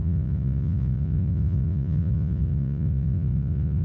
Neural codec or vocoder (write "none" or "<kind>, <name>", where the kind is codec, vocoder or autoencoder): vocoder, Vocos